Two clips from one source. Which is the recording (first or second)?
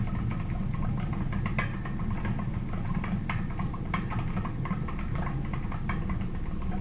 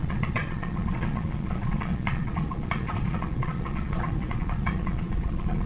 first